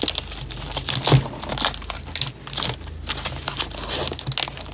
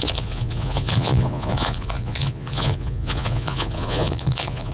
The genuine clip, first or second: first